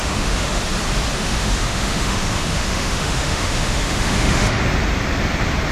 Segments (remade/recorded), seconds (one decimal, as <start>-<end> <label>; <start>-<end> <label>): 0.0-0.6 remade; 0.6-1.2 recorded; 1.2-4.6 remade; 4.6-5.7 recorded